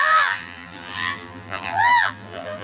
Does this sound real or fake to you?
fake